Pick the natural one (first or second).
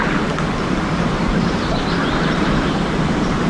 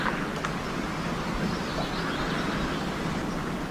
second